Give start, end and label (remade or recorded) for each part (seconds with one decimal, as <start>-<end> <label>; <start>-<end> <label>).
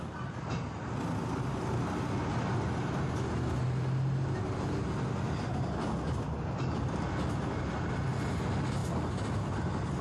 0.0-10.0 recorded